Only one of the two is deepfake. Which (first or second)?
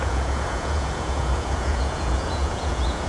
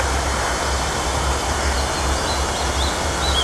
first